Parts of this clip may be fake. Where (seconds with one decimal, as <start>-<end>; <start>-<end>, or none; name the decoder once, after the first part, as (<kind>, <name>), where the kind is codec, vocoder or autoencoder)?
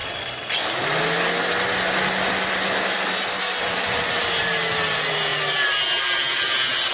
none